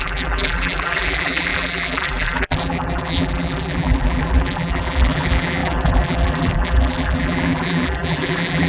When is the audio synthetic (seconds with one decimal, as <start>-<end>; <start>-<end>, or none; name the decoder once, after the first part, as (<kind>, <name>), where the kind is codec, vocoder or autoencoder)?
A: 0.0-8.7 (vocoder, BigVGAN v2)